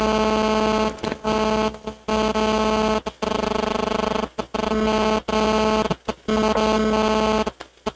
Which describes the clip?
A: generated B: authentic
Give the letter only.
B